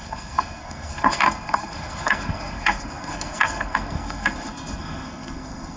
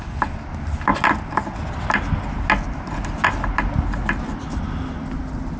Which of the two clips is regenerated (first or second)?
first